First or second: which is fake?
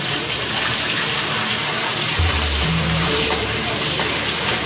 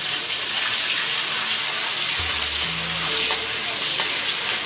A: first